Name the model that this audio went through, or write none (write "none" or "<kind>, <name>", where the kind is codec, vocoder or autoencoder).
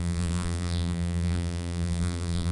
vocoder, BigVGAN v2